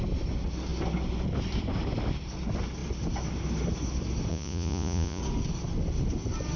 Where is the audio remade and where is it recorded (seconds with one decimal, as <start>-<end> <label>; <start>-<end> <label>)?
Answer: 0.0-4.3 recorded; 4.3-5.2 remade; 5.2-6.6 recorded